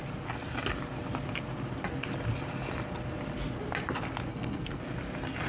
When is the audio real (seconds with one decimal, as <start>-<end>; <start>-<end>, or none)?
0.0-4.3; 4.8-5.5

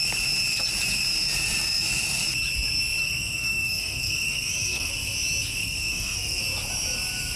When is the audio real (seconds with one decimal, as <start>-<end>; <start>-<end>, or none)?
0.0-3.0; 4.9-5.6; 6.4-7.4

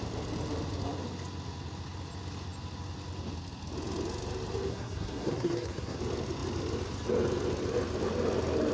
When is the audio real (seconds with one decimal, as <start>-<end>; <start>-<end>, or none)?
0.0-4.7; 6.0-8.7

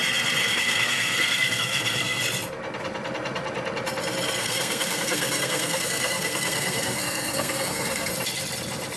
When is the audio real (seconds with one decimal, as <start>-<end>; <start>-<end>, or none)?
0.0-0.4; 2.2-4.4; 8.1-9.0

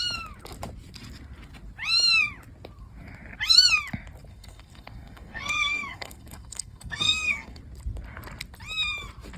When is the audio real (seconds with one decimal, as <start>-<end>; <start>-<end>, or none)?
0.0-4.3; 7.6-9.4

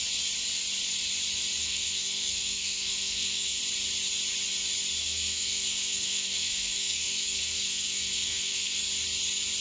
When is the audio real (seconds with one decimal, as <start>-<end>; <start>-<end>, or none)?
0.0-1.6; 3.6-5.0; 8.8-9.6

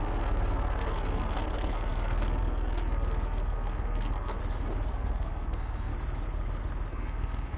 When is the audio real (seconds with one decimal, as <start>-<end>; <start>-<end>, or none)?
4.4-4.9; 5.9-6.9

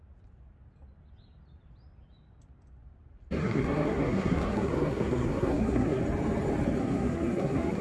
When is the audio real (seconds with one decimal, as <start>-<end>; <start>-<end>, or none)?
0.0-3.4; 6.0-6.8